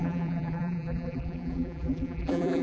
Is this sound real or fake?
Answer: fake